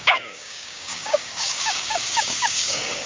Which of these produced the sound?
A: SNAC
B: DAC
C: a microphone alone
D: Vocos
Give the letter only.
B